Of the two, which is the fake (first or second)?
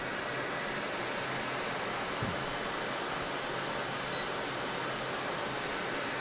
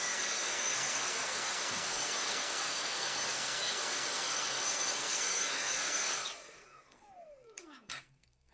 second